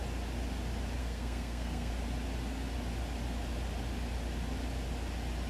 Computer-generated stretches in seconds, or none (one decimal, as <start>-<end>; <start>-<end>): 1.0-1.9